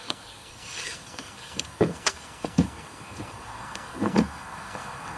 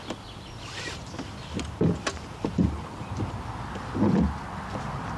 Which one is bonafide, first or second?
second